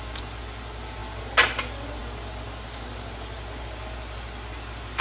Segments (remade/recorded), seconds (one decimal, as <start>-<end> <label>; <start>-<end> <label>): 0.0-5.0 recorded